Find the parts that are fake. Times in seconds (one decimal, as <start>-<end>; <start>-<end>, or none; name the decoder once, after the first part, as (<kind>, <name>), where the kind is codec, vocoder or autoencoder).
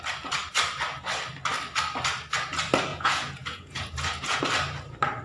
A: 2.9-4.4 (vocoder, Vocos)